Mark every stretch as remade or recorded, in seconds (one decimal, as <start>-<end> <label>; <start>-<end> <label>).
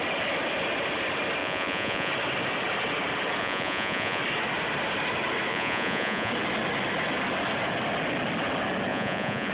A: 0.0-1.4 recorded; 1.4-2.1 remade; 2.1-3.4 recorded; 3.4-4.2 remade; 4.2-5.5 recorded; 5.5-6.3 remade; 6.3-8.9 recorded; 8.9-9.5 remade